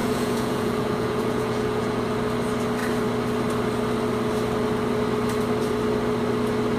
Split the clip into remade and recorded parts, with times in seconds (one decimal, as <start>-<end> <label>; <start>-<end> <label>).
0.0-2.0 remade; 2.0-6.8 recorded